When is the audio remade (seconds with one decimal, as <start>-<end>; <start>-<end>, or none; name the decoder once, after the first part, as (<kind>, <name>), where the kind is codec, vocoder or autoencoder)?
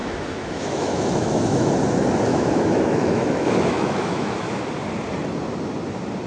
0.0-1.7 (autoencoder, DAC-VAE); 2.3-4.6